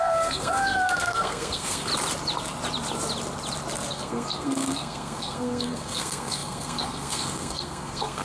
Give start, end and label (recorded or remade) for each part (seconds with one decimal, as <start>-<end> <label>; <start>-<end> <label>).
0.0-1.9 remade; 1.9-3.9 recorded; 3.9-8.2 remade